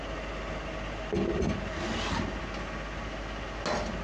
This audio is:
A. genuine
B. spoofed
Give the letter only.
A